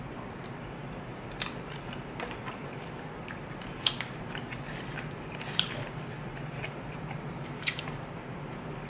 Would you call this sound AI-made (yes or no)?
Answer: yes